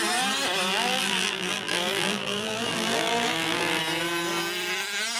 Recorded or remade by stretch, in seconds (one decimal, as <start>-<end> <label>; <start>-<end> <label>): 0.0-0.7 recorded; 0.7-3.8 remade; 3.8-5.2 recorded